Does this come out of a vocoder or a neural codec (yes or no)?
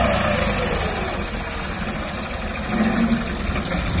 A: no